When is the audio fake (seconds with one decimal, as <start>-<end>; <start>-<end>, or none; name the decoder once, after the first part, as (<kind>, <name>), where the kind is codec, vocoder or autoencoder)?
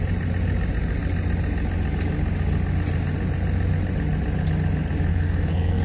5.1-5.8 (codec, SNAC)